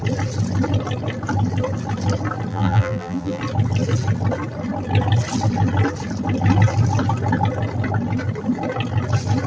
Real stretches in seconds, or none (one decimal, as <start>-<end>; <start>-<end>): 0.0-2.5; 3.4-9.5